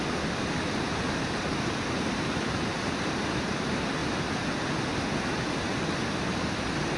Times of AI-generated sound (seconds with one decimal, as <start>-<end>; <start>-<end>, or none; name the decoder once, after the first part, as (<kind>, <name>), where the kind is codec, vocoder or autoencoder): 0.0-4.0 (vocoder, BigVGAN v2)